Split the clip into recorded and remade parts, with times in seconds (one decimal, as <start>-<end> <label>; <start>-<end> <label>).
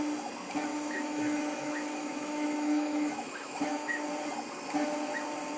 0.0-0.7 recorded; 0.7-4.1 remade; 4.1-5.6 recorded